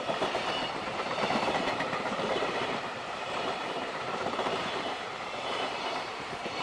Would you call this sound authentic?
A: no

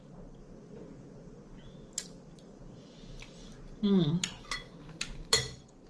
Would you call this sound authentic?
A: yes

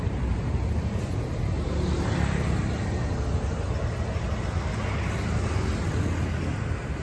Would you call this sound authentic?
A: yes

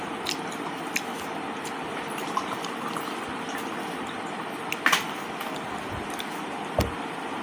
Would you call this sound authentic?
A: no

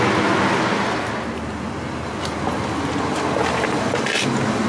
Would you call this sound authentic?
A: yes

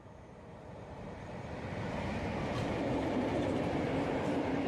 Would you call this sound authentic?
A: no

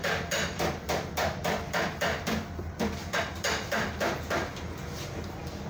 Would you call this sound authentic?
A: no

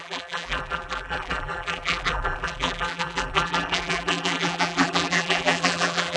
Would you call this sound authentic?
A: no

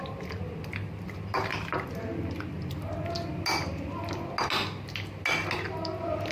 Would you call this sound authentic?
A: yes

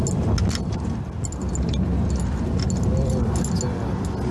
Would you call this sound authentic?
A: yes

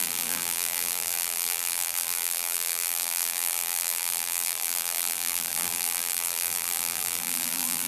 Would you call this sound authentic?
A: no